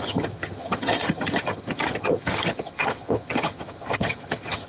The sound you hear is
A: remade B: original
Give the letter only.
A